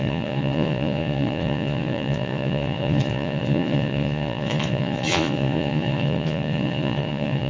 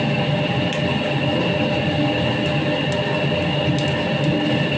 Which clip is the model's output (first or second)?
first